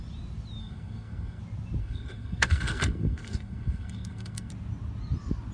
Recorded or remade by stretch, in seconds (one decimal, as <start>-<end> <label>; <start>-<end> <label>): 0.0-0.6 recorded; 0.6-1.4 remade; 1.4-1.8 recorded; 1.8-4.5 remade; 4.5-5.5 recorded